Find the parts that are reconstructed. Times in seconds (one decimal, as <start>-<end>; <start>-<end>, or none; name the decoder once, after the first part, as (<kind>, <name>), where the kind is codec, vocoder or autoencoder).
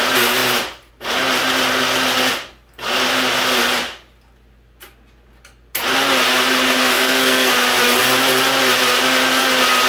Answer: 6.8-7.5 (codec, SNAC)